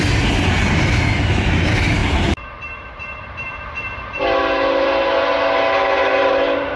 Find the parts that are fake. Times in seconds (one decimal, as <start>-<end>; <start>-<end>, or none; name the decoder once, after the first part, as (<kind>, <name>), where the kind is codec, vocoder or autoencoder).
2.0-4.4 (vocoder, BigVGAN v2); 6.0-6.8